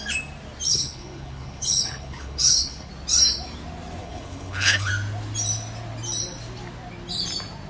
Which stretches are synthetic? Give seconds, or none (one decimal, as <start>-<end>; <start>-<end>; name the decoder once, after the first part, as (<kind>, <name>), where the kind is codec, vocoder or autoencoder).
0.7-2.9 (codec, HILCodec); 4.0-4.9